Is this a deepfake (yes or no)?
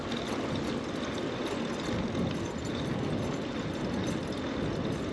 no